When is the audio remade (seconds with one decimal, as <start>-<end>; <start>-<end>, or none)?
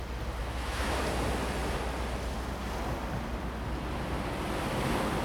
0.4-1.0